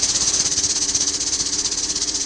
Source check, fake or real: fake